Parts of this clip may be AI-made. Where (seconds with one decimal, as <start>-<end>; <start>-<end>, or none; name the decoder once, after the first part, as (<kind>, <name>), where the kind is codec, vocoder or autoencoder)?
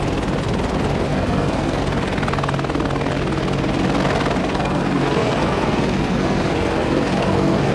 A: 1.1-1.8 (codec, SNAC); 4.4-7.7